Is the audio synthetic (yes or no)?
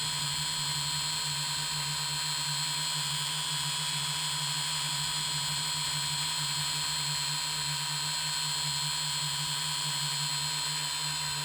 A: no